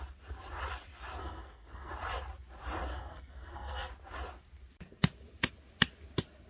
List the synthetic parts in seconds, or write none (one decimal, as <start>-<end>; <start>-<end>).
1.2-1.9; 2.9-3.9